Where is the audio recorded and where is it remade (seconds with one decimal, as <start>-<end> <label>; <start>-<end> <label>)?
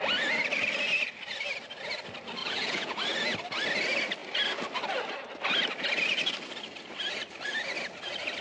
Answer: 0.0-2.4 recorded; 2.4-3.0 remade; 3.0-8.4 recorded